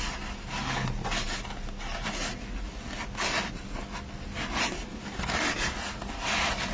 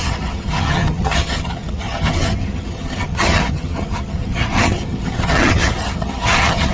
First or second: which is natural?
first